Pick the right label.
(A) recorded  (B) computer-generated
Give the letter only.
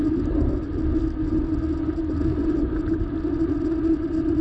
A